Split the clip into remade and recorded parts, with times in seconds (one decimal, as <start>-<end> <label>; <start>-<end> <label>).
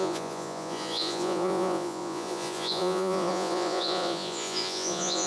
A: 0.0-5.3 remade